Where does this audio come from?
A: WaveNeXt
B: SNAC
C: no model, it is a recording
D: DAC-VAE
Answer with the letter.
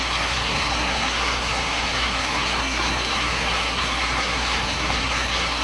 B